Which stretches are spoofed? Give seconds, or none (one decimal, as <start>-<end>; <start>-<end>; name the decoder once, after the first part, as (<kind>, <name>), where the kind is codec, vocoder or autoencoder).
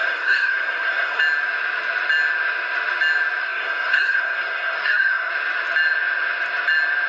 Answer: 0.0-1.2 (codec, SNAC); 3.4-5.3